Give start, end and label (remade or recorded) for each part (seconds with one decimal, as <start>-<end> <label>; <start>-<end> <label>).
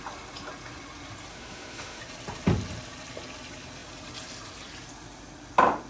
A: 0.0-1.3 recorded; 1.3-2.0 remade; 2.0-5.9 recorded